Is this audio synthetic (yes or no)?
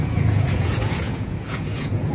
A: yes